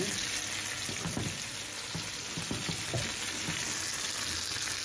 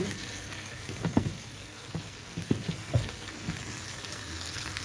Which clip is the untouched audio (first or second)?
first